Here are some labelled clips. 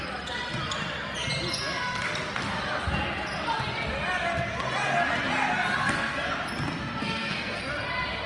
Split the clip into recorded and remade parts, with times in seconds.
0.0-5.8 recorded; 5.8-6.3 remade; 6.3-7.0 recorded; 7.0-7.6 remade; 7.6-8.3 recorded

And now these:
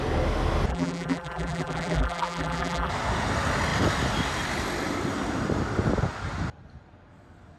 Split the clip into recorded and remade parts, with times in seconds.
0.0-0.7 recorded; 0.7-2.9 remade; 2.9-7.6 recorded

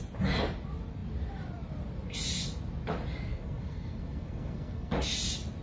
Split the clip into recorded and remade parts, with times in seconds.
0.0-3.3 recorded; 3.3-4.9 remade; 4.9-5.6 recorded

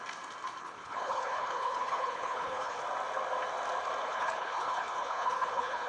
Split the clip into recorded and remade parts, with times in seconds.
0.0-0.6 recorded; 0.6-2.8 remade; 2.8-4.0 recorded; 4.0-5.9 remade

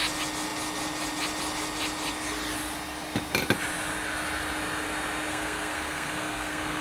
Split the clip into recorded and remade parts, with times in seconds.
0.0-5.3 recorded; 5.3-6.8 remade

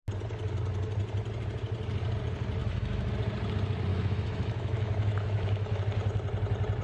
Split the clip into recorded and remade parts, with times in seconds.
0.0-2.6 recorded; 2.6-3.1 remade; 3.1-3.9 recorded; 3.9-5.8 remade; 5.8-6.8 recorded

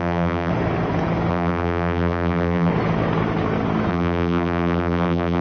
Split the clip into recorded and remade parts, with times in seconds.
0.0-0.5 remade; 0.5-1.3 recorded; 1.3-2.7 remade; 2.7-3.9 recorded; 3.9-5.4 remade